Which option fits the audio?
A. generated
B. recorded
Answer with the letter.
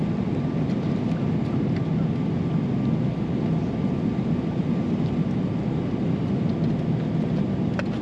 B